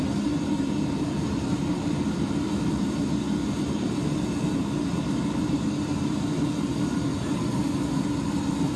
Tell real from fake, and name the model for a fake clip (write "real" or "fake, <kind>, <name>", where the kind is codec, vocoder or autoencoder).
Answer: real